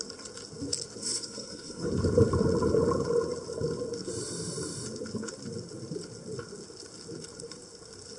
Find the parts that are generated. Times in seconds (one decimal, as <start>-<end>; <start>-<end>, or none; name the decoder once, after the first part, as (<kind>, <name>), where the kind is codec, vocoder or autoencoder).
1.0-1.9 (codec, SNAC)